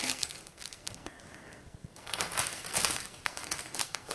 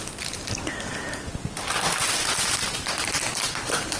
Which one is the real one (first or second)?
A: second